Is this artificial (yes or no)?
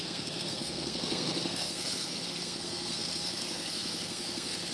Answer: yes